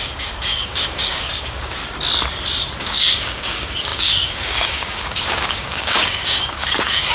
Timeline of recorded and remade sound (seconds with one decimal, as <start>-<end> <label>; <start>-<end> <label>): 0.0-1.8 remade; 1.8-2.8 recorded; 2.8-7.1 remade